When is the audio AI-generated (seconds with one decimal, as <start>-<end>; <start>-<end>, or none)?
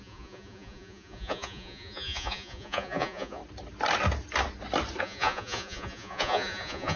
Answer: 0.0-3.4; 5.0-7.0